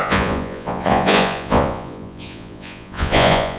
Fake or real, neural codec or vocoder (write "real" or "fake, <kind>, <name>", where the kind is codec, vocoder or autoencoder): fake, vocoder, Vocos